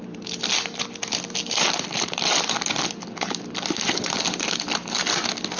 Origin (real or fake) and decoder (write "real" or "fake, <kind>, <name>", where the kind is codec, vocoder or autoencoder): real